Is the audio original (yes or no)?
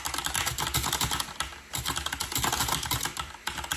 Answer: yes